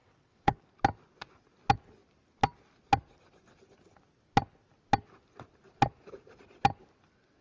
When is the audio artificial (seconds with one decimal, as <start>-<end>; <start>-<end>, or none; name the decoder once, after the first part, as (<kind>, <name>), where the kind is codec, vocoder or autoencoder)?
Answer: 0.0-0.6 (vocoder, WaveNeXt)